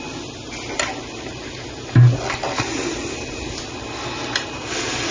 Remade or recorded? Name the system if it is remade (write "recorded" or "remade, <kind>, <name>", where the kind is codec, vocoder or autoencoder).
recorded